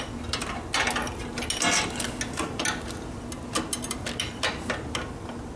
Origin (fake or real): real